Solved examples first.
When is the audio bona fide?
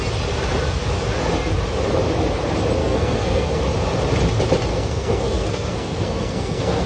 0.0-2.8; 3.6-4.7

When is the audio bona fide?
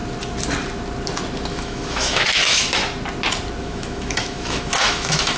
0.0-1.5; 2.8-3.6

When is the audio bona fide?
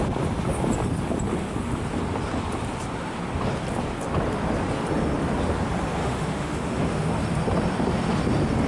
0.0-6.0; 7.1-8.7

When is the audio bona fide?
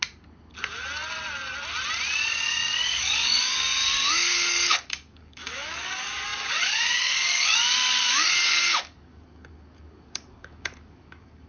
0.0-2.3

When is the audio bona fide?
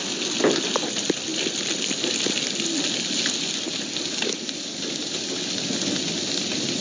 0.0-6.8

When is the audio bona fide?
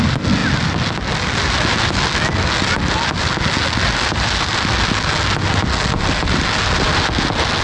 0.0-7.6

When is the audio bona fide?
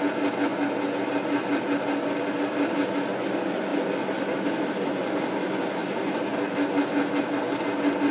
0.0-5.0; 5.6-8.1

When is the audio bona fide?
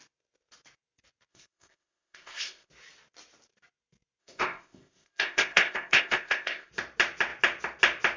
0.0-1.3; 2.7-4.2; 6.7-8.2